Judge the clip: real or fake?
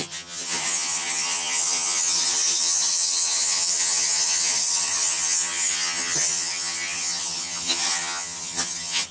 fake